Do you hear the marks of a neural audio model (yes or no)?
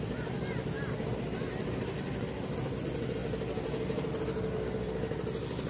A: no